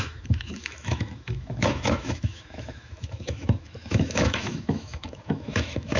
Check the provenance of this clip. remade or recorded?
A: remade